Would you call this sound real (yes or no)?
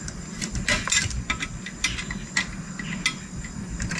yes